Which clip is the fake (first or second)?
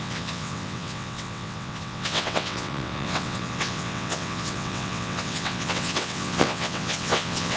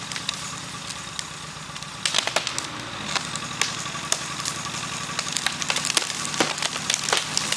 first